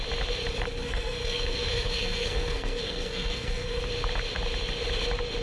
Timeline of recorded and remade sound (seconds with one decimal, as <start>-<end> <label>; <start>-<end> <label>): 0.0-0.8 recorded; 0.8-3.8 remade; 3.8-5.4 recorded